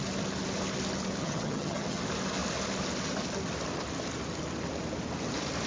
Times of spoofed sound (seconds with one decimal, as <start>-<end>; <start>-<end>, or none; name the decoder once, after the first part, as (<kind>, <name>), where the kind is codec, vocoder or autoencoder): 1.2-2.0 (vocoder, HiFi-GAN)